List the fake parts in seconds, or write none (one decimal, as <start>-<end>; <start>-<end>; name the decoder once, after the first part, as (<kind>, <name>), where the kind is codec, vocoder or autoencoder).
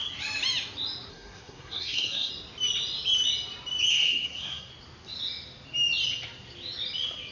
1.1-2.3 (codec, SNAC); 3.9-4.7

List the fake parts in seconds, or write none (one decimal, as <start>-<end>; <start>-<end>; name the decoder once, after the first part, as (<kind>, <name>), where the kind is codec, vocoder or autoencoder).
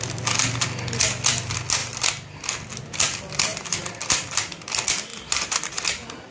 3.5-4.2 (vocoder, BigVGAN v2); 5.1-6.3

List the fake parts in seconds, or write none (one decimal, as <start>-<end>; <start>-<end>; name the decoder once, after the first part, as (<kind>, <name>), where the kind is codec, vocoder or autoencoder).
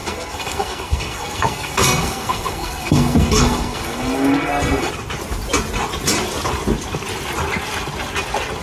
0.0-4.9 (codec, SNAC)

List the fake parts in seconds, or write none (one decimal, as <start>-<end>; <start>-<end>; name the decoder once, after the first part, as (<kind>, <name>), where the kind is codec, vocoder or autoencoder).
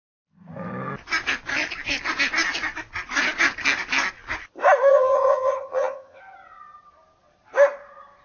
4.9-6.2 (vocoder, HiFi-GAN)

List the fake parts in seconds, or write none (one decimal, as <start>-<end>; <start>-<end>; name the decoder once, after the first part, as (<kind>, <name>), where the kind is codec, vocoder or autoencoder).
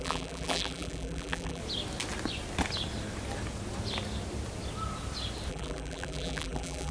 0.0-1.6 (vocoder, BigVGAN v2); 5.5-6.9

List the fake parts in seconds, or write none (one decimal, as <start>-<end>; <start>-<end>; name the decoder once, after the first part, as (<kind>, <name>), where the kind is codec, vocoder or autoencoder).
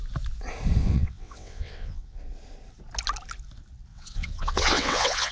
0.8-2.2 (vocoder, WaveNeXt); 3.9-5.3